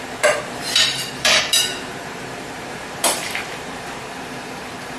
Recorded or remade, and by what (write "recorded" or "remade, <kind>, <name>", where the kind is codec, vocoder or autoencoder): remade, vocoder, BigVGAN v2